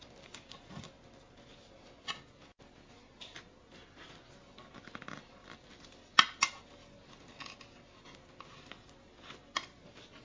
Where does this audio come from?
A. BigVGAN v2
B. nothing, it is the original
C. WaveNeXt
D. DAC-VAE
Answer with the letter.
B